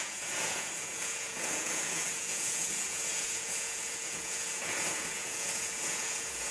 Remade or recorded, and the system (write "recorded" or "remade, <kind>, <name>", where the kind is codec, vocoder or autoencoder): remade, vocoder, Vocos